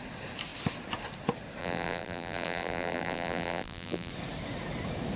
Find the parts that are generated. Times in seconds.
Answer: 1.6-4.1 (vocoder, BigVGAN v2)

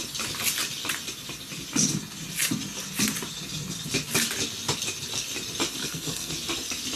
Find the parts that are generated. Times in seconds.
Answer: 5.8-6.3 (codec, SNAC)

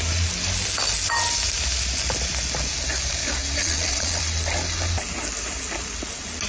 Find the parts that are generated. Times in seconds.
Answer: 3.6-4.2 (vocoder, Vocos)

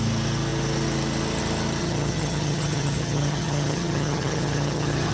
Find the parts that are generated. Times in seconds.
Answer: 1.8-5.1 (vocoder, HiFi-GAN)

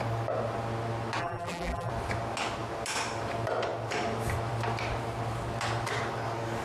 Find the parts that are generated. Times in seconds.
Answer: 1.2-1.9 (vocoder, BigVGAN v2)